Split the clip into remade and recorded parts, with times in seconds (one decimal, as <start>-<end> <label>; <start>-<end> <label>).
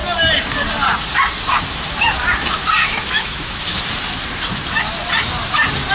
0.0-2.8 recorded; 2.8-3.6 remade; 3.6-5.9 recorded